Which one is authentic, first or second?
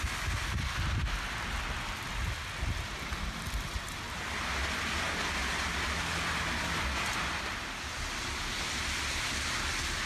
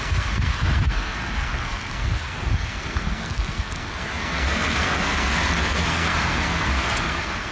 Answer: first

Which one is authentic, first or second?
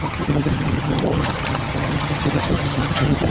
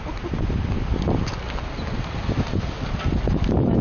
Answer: second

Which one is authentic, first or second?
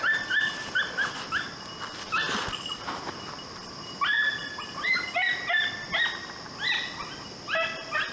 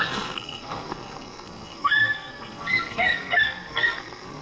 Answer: first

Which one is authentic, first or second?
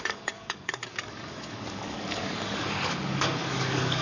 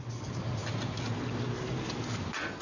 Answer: second